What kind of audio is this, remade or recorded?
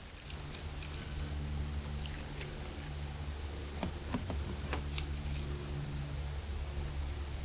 recorded